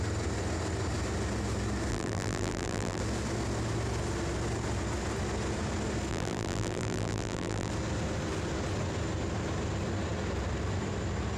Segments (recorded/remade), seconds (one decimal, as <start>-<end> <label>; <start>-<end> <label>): 0.0-1.9 recorded; 1.9-3.0 remade; 3.0-6.1 recorded; 6.1-7.7 remade; 7.7-11.4 recorded